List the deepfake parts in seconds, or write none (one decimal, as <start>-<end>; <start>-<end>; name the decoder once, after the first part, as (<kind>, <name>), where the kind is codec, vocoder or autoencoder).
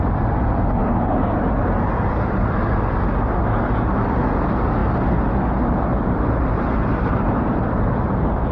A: 0.8-1.9 (vocoder, BigVGAN v2); 5.9-8.5